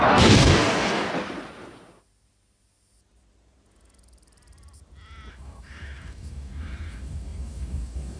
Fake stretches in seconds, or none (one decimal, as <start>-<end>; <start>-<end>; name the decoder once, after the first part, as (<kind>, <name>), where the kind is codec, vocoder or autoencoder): 0.0-1.1 (codec, DAC); 5.3-8.2